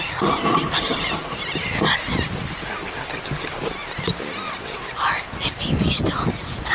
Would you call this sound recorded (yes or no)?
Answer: yes